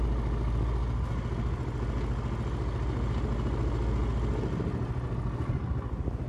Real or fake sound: real